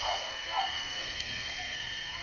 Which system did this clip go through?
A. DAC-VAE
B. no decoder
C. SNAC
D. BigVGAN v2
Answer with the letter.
C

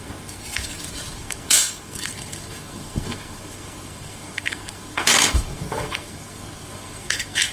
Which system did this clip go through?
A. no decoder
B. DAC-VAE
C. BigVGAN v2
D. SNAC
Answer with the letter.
D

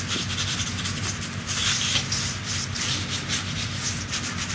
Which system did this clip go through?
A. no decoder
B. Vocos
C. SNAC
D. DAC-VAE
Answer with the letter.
A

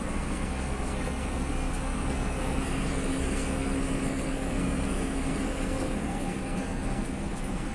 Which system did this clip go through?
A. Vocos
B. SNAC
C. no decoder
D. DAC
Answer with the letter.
B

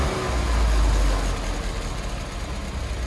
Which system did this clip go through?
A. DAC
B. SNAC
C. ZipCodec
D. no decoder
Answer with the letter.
D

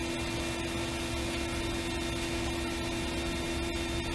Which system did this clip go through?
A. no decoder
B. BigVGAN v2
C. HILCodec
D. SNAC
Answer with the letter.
A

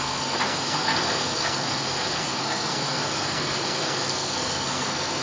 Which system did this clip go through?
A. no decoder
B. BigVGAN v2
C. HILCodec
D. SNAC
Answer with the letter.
D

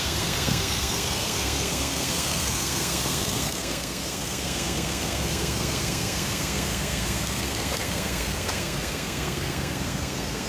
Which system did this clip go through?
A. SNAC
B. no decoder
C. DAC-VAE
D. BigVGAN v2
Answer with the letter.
A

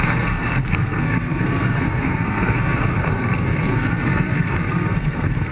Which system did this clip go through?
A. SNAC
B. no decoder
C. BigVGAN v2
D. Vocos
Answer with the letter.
A